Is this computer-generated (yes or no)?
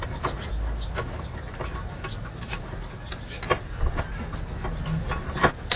no